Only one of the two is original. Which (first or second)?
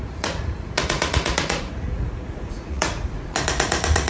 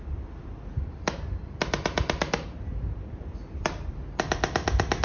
second